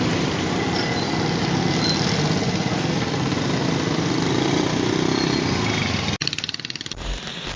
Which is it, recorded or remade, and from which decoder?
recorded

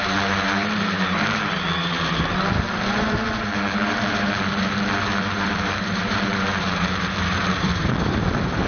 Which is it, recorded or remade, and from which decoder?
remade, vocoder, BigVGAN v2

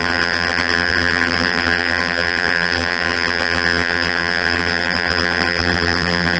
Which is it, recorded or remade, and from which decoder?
remade, vocoder, BigVGAN v2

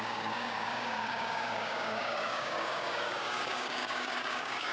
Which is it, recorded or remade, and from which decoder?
remade, codec, DAC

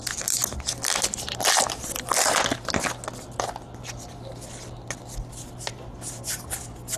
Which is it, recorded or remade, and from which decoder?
recorded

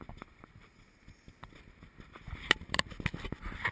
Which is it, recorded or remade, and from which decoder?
recorded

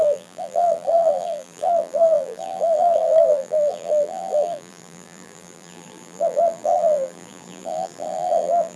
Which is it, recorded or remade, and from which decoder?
remade, vocoder, BigVGAN v2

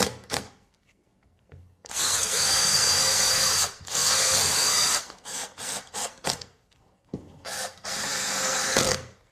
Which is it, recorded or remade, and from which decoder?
remade, codec, SNAC